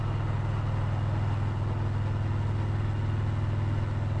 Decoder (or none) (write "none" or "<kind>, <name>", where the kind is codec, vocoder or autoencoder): none